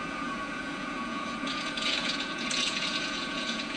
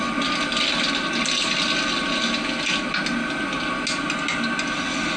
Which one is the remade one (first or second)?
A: first